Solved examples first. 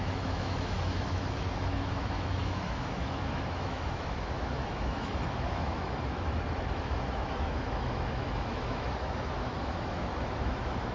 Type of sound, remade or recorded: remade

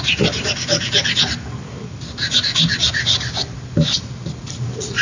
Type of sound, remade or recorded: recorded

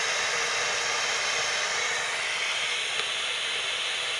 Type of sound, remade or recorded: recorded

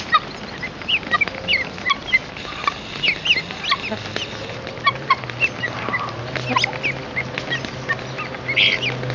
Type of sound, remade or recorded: recorded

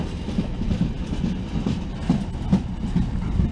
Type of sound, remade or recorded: recorded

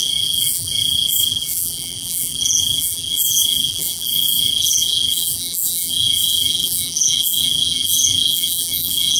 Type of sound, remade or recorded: remade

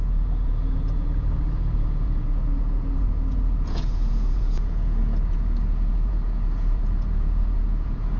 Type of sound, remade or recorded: remade